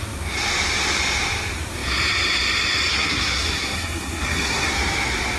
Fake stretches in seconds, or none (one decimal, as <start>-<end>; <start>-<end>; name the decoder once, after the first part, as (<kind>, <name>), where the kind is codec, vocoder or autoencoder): 2.9-4.7 (codec, SNAC)